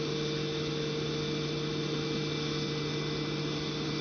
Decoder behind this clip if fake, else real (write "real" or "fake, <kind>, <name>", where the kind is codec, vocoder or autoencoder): real